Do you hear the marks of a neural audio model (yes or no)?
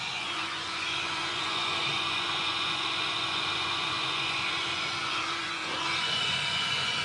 yes